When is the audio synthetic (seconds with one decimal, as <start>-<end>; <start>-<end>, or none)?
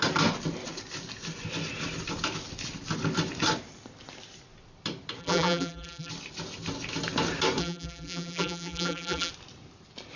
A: 5.2-6.1; 7.6-9.3